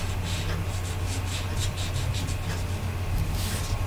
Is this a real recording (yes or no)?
yes